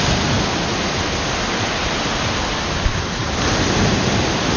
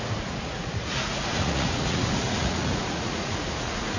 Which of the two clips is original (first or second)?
first